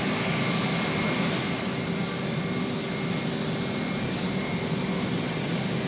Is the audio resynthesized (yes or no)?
no